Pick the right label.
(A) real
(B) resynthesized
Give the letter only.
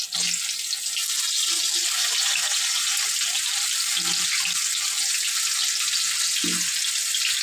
A